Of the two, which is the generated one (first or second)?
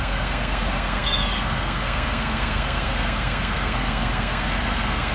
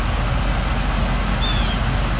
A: first